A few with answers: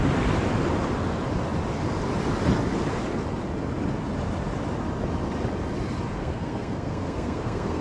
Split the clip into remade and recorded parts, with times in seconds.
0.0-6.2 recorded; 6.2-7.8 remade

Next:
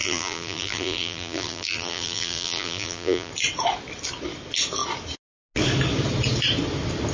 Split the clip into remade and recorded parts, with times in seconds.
0.0-3.3 remade; 3.3-7.1 recorded

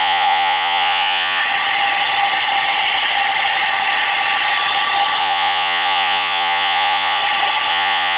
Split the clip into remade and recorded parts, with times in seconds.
0.0-1.4 remade; 1.4-5.2 recorded; 5.2-7.2 remade; 7.2-7.7 recorded; 7.7-8.2 remade

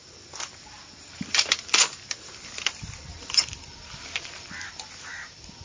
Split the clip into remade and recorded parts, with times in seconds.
0.0-3.4 remade; 3.4-5.6 recorded

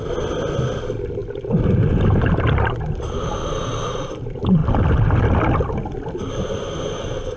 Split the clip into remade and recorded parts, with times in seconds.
0.0-7.4 recorded

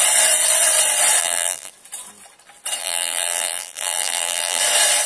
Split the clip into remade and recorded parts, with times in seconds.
0.0-1.2 recorded; 1.2-1.7 remade; 1.7-2.8 recorded; 2.8-4.6 remade; 4.6-5.1 recorded

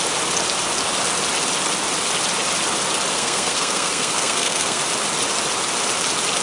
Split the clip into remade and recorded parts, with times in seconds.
0.0-3.1 recorded; 3.1-4.8 remade; 4.8-6.4 recorded